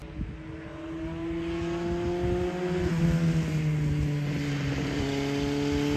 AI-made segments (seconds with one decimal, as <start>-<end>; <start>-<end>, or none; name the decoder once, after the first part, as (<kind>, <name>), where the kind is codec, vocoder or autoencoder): none